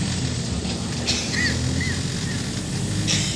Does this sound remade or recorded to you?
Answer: recorded